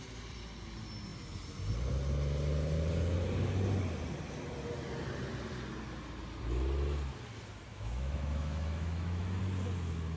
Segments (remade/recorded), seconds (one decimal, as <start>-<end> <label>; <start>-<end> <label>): 0.0-7.7 recorded; 7.7-9.4 remade; 9.4-10.2 recorded